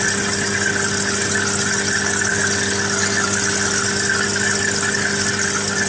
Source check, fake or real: real